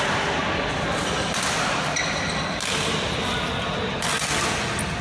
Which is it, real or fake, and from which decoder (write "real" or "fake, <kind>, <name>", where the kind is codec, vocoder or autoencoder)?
real